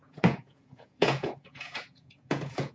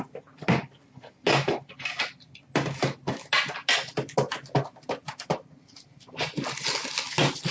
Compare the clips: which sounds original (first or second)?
second